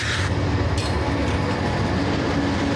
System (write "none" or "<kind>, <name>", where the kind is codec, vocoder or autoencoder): none